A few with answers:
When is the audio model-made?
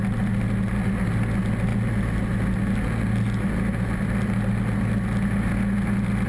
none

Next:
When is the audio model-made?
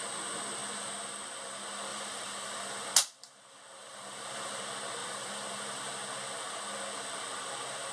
1.9-2.9; 3.8-4.6; 5.0-5.9